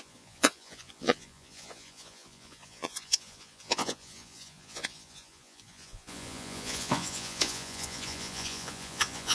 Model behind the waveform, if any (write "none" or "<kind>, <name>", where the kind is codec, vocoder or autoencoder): vocoder, Vocos